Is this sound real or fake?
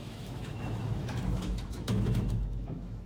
fake